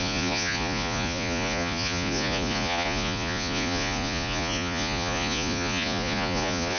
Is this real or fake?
fake